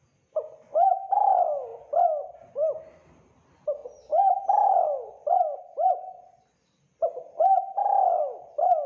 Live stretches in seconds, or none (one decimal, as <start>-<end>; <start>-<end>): 0.0-8.9